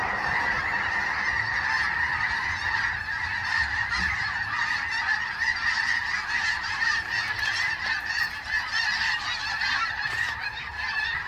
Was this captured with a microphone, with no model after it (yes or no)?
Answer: yes